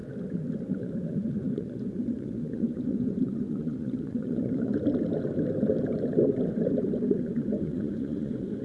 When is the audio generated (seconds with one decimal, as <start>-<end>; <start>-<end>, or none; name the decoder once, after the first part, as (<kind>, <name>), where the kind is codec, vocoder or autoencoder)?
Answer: 0.6-4.7 (vocoder, Vocos); 7.1-8.6